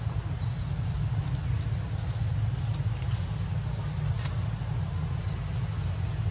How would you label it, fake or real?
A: real